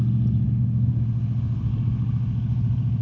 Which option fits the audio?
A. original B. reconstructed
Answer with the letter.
A